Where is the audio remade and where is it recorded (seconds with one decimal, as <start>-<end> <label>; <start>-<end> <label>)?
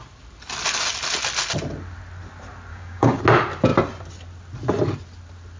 0.0-2.7 recorded; 2.7-3.2 remade; 3.2-5.6 recorded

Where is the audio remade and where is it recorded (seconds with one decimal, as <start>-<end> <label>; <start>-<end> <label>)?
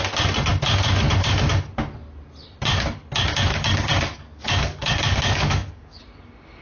0.0-3.5 recorded; 3.5-6.0 remade; 6.0-6.6 recorded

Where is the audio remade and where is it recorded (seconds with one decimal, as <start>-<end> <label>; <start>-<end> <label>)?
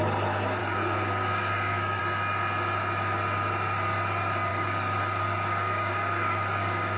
0.0-0.6 recorded; 0.6-2.0 remade; 2.0-4.5 recorded; 4.5-7.0 remade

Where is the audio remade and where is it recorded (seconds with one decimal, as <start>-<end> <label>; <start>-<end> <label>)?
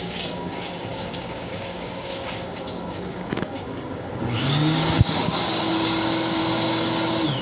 0.0-6.4 remade; 6.4-7.4 recorded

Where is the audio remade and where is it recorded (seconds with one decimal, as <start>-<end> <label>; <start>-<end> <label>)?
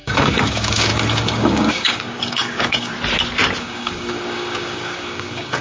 0.0-2.9 remade; 2.9-3.6 recorded; 3.6-5.6 remade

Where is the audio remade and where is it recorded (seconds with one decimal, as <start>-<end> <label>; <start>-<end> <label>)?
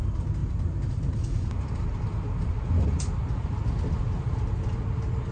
0.0-5.3 recorded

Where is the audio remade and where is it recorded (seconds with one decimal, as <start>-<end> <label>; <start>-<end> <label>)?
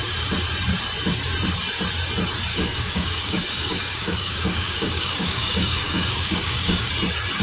0.0-2.5 recorded; 2.5-6.9 remade; 6.9-7.4 recorded